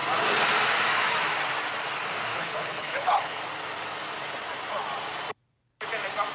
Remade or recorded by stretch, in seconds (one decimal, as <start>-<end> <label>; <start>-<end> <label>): 0.0-2.3 recorded; 2.3-3.4 remade; 3.4-6.3 recorded